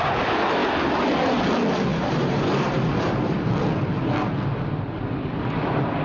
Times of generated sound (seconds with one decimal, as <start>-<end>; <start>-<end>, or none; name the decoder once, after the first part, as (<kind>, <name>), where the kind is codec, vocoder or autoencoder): 1.9-3.5 (vocoder, BigVGAN v2)